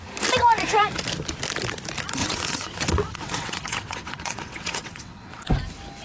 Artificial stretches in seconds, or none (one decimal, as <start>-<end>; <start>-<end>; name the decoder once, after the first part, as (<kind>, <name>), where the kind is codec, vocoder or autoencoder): 2.2-5.5 (vocoder, WaveNeXt)